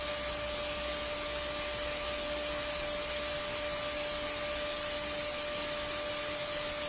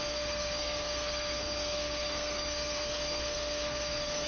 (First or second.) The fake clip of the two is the second